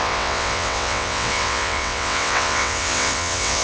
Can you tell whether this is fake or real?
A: fake